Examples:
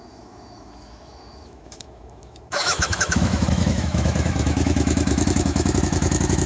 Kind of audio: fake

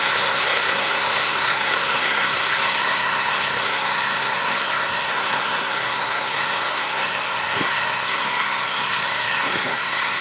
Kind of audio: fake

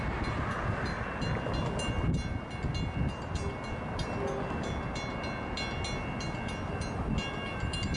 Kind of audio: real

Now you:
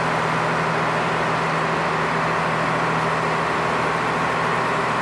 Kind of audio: real